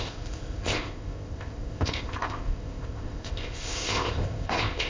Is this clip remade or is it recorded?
remade